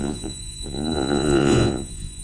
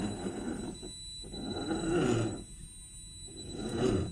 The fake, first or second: first